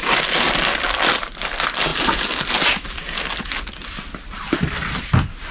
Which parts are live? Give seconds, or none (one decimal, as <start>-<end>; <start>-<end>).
0.0-5.5